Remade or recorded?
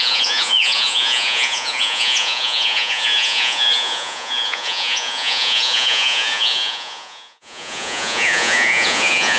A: remade